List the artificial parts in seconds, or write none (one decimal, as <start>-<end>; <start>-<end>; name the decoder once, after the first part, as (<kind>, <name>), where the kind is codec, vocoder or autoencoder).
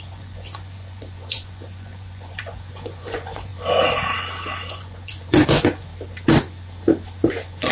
0.0-3.5 (vocoder, Vocos); 4.7-5.9; 7.3-7.7